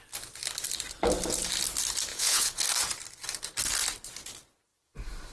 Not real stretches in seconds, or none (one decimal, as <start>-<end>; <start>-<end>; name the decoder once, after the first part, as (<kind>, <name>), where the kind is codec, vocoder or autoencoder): 2.1-2.6 (vocoder, Vocos)